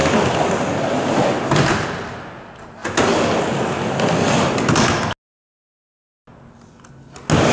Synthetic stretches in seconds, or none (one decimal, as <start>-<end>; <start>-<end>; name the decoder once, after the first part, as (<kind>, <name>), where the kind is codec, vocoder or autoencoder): none